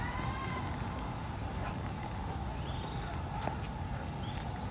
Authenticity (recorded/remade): recorded